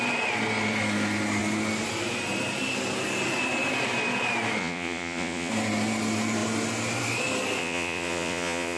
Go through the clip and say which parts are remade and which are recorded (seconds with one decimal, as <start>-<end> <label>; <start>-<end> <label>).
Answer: 0.0-4.6 recorded; 4.6-5.5 remade; 5.5-7.6 recorded; 7.6-8.8 remade